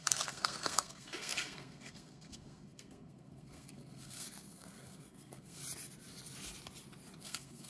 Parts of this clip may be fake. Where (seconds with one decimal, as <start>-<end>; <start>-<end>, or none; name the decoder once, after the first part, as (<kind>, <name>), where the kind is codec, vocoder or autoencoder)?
0.0-5.6 (codec, SNAC); 7.2-7.7